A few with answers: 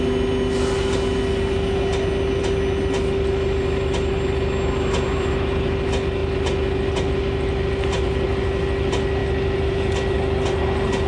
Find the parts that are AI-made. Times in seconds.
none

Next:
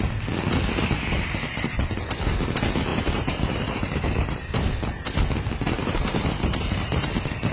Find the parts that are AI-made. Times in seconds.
2.9-4.7 (vocoder, BigVGAN v2); 5.8-7.1

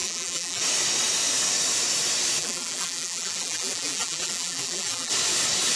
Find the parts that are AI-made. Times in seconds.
0.0-0.6 (vocoder, BigVGAN v2); 2.4-5.1

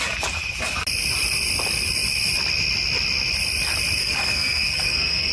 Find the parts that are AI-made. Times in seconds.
4.0-5.3 (codec, SNAC)